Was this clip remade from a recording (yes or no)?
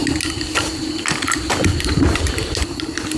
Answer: no